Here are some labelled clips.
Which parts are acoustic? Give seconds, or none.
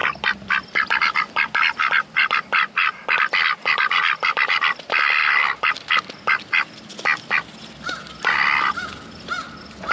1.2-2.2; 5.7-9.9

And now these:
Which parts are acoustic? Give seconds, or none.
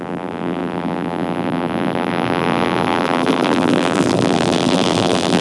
none